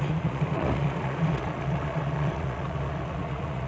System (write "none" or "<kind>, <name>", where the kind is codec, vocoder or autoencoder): vocoder, Vocos